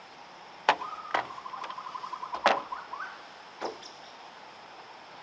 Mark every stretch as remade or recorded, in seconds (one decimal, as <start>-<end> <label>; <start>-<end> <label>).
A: 0.0-1.1 remade; 1.1-4.2 recorded; 4.2-5.2 remade